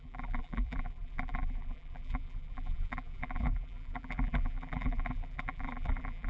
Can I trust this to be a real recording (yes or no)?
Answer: no